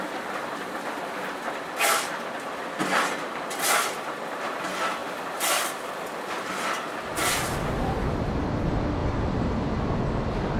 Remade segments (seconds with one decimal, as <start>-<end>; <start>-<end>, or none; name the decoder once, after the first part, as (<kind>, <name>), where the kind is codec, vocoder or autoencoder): 5.0-5.9 (vocoder, BigVGAN v2); 9.0-10.0

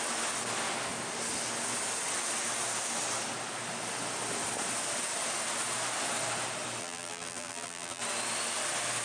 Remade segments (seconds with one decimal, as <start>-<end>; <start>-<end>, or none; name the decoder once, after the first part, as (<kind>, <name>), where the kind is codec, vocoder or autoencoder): 6.8-8.0 (vocoder, BigVGAN v2)

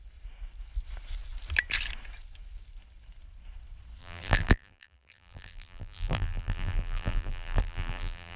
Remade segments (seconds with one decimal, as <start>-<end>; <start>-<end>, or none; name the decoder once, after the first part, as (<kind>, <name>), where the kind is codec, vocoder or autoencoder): 4.0-8.4 (vocoder, BigVGAN v2)

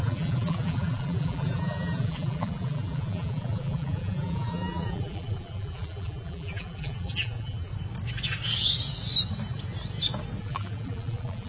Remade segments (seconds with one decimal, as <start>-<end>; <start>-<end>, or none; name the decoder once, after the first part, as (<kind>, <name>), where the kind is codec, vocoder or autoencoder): 0.0-7.7 (vocoder, BigVGAN v2); 10.4-11.5

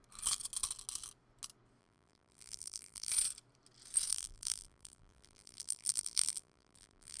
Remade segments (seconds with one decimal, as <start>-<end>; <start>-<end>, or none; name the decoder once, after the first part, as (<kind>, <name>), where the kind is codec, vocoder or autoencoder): 1.8-3.1 (vocoder, BigVGAN v2); 4.1-7.2

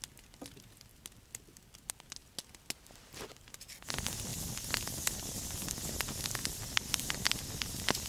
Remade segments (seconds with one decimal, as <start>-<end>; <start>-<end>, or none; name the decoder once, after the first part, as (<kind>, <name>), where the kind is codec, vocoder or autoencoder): 6.4-6.9 (vocoder, BigVGAN v2)

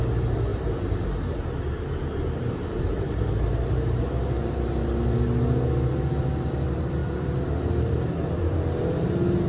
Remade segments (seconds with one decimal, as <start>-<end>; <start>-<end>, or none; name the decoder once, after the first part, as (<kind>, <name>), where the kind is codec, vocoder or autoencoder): 0.5-4.0 (vocoder, BigVGAN v2)